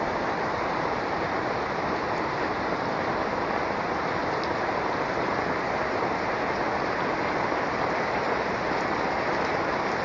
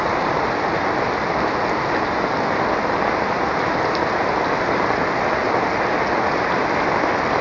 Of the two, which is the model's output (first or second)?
first